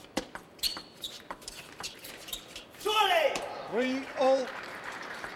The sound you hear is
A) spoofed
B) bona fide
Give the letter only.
A